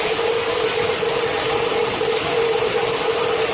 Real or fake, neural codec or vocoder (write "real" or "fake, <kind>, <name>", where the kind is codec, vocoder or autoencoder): real